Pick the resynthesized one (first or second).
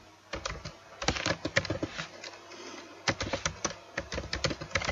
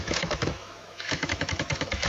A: second